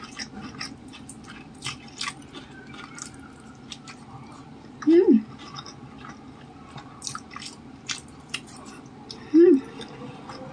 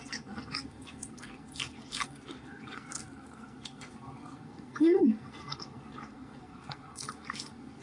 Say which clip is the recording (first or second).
first